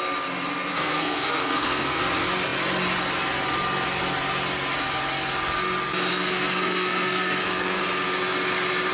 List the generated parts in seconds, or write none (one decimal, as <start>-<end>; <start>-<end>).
0.7-2.0; 6.1-7.8